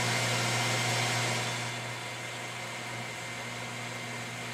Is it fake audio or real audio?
real